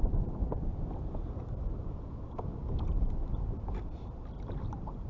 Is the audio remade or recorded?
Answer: recorded